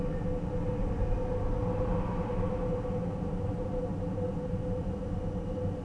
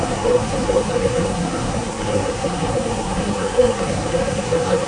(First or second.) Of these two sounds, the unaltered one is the first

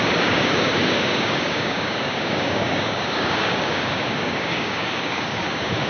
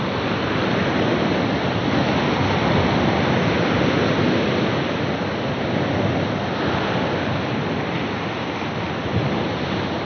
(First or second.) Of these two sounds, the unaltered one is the second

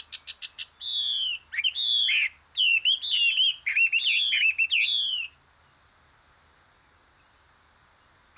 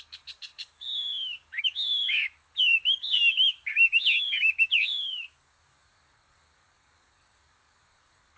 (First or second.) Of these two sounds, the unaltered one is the first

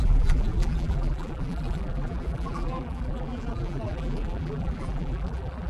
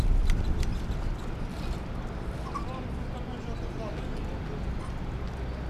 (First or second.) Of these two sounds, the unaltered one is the second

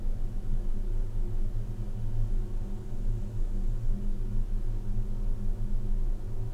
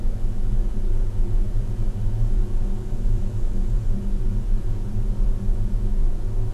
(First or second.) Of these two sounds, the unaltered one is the first